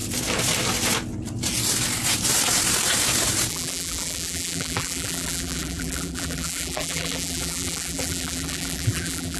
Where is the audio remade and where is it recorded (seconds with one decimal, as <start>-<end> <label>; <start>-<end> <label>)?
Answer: 0.0-3.5 recorded; 3.5-9.4 remade